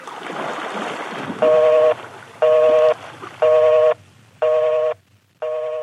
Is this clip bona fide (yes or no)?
yes